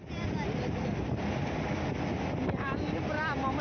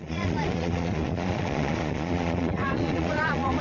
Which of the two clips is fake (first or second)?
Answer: second